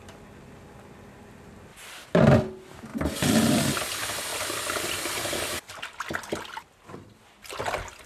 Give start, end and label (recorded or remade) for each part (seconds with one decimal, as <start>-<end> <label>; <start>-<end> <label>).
0.0-1.7 recorded; 1.7-2.2 remade; 2.2-2.9 recorded; 2.9-3.4 remade; 3.4-8.1 recorded